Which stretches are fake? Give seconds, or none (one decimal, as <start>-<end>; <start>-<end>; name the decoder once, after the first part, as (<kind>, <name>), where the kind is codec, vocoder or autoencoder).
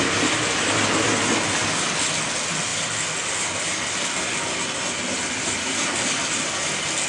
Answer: none